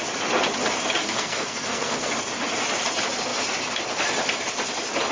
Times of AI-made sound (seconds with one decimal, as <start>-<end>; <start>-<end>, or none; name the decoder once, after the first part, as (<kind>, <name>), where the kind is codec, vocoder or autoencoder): 1.0-2.2 (codec, SNAC)